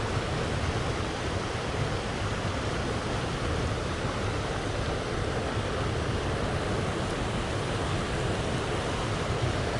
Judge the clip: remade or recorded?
recorded